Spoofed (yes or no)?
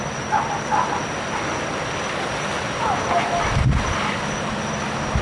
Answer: no